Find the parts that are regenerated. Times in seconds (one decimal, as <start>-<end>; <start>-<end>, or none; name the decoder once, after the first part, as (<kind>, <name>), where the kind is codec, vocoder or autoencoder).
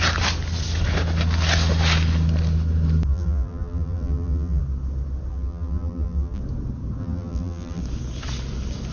3.1-4.6 (vocoder, BigVGAN v2); 5.3-6.4; 7.0-7.8